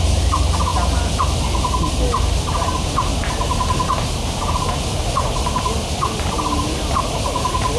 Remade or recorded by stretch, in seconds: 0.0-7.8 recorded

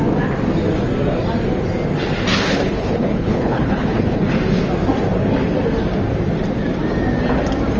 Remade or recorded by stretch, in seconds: 0.0-2.3 recorded; 2.3-4.3 remade; 4.3-7.8 recorded